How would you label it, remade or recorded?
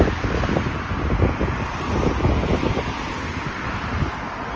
recorded